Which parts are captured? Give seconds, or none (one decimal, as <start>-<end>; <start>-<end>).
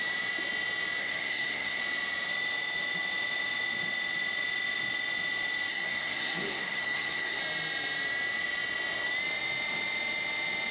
0.0-1.0; 1.8-5.7; 7.4-10.7